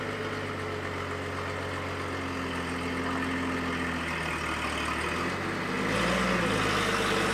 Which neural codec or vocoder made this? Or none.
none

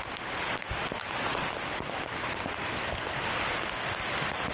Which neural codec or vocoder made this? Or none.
none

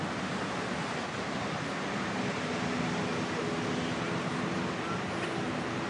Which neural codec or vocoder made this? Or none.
none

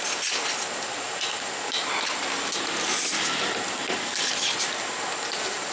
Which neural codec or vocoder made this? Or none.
none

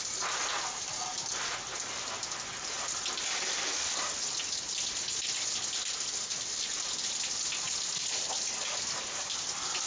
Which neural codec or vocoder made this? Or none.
none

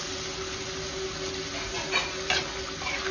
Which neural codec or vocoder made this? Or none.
none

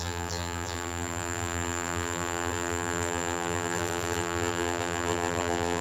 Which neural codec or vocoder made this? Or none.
vocoder, BigVGAN v2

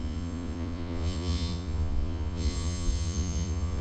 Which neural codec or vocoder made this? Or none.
vocoder, Vocos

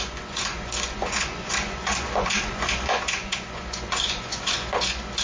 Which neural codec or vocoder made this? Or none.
vocoder, Vocos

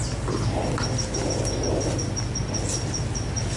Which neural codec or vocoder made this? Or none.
none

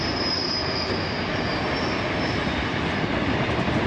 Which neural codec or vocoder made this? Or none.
none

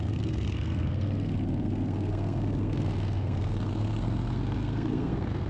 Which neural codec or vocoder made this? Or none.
codec, SNAC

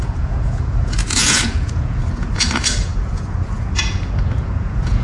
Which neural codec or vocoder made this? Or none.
vocoder, Vocos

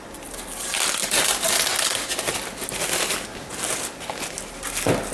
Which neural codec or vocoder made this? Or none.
none